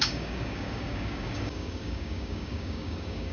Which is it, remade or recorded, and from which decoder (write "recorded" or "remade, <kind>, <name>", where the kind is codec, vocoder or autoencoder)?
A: remade, codec, DAC